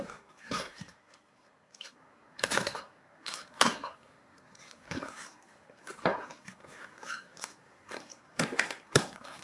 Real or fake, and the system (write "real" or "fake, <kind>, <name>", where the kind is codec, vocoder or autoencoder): fake, codec, SNAC